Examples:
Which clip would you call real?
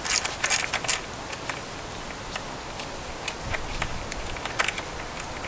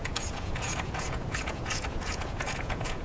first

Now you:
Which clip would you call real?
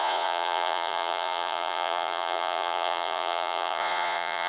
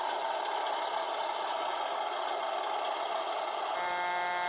second